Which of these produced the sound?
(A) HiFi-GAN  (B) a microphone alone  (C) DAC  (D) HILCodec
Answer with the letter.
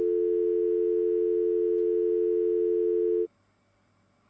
B